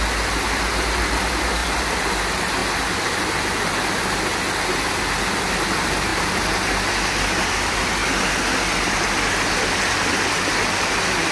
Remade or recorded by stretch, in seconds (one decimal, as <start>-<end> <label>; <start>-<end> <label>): 0.0-11.3 recorded